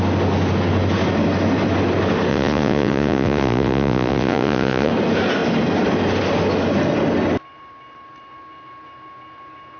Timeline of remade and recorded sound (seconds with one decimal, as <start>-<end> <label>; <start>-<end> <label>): 0.0-2.3 recorded; 2.3-4.9 remade; 4.9-9.8 recorded